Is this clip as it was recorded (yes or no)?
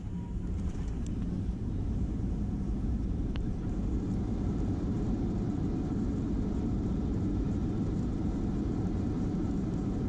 no